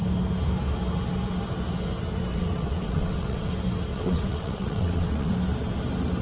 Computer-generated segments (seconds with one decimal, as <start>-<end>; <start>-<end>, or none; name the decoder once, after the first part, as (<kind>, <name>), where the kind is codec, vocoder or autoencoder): 2.3-3.5 (vocoder, WaveNeXt); 3.9-5.3

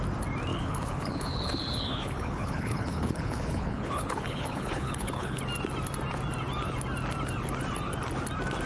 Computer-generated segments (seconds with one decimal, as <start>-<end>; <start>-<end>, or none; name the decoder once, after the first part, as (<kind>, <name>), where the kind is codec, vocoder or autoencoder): 0.5-5.4 (codec, HILCodec)

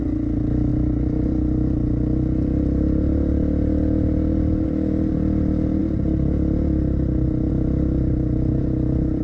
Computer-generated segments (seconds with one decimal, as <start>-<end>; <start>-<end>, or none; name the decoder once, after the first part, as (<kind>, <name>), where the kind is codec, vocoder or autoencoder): none

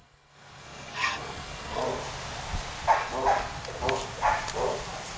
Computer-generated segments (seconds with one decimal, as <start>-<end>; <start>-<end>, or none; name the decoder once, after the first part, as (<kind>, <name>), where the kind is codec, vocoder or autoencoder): 0.0-1.8 (codec, SNAC)